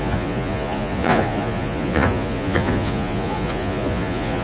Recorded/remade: remade